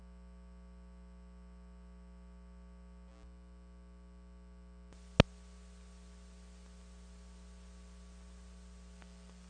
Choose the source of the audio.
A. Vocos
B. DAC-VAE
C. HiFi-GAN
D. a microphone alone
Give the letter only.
D